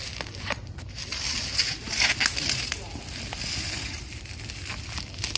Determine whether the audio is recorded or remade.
recorded